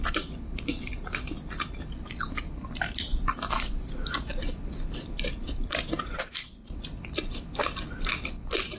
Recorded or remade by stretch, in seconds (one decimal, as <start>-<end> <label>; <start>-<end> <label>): 0.0-8.8 remade